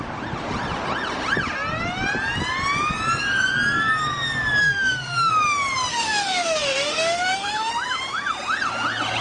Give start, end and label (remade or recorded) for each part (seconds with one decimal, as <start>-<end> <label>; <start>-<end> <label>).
0.0-4.6 recorded; 4.6-5.3 remade; 5.3-5.9 recorded; 5.9-7.7 remade; 7.7-9.2 recorded